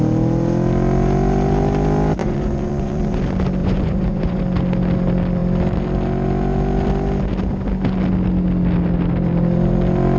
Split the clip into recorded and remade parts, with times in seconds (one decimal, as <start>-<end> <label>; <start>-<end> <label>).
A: 0.0-2.2 recorded; 2.2-3.2 remade; 3.2-3.6 recorded; 3.6-4.4 remade; 4.4-10.2 recorded